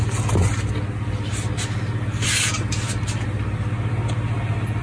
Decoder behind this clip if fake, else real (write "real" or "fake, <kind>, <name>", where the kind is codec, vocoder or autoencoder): real